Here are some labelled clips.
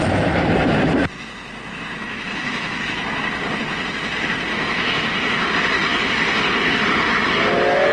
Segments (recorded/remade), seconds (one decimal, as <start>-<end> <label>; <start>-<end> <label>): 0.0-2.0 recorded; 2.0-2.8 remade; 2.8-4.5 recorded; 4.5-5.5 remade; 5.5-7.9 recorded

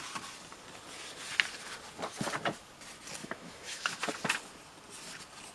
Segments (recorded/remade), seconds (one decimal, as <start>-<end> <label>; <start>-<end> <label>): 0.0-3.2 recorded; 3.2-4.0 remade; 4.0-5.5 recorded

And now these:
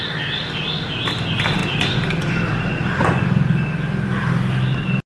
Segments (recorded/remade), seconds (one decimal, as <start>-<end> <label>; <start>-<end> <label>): 0.0-5.1 recorded

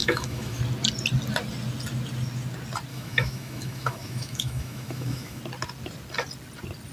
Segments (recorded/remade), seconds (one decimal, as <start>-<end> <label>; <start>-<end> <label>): 0.0-0.6 remade; 0.6-2.9 recorded; 2.9-5.4 remade; 5.4-6.9 recorded